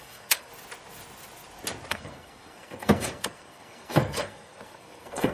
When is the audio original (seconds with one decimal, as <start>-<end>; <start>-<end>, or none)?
0.5-1.9